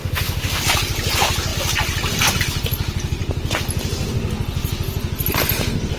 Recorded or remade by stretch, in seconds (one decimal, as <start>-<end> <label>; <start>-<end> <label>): 0.0-0.6 remade; 0.6-6.0 recorded